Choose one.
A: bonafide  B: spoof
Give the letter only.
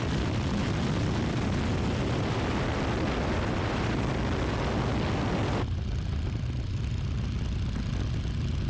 A